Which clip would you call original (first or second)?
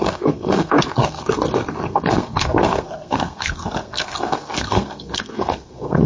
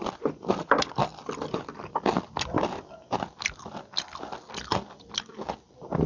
second